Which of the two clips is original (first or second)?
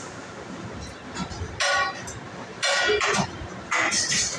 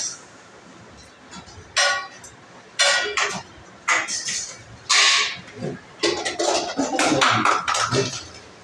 second